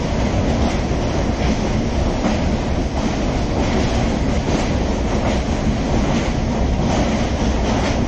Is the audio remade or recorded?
recorded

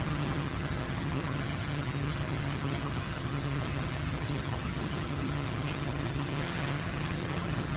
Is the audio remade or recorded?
remade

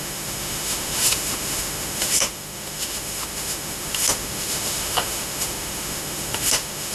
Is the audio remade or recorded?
remade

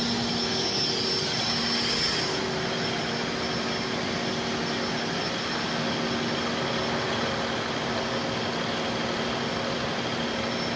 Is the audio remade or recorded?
recorded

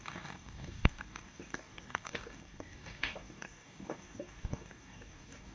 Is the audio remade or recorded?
remade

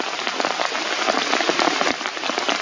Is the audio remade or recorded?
recorded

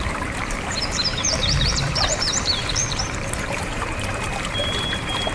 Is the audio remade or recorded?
remade